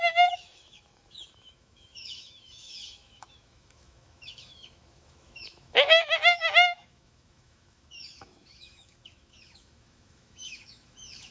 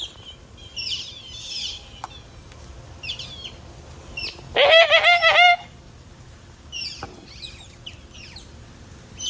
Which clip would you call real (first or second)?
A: second